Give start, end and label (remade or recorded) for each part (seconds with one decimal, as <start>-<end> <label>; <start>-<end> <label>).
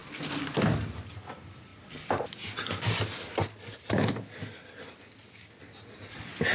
0.0-6.5 recorded